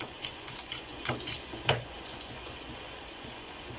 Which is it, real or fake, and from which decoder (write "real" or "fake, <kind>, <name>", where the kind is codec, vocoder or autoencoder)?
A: fake, vocoder, Vocos